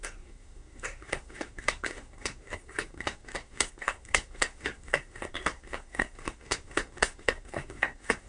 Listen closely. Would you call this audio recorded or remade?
remade